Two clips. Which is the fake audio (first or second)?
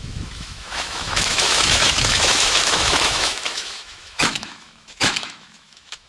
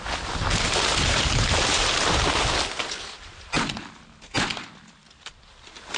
first